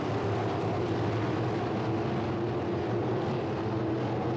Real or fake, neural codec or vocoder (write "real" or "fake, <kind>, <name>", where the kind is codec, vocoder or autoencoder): real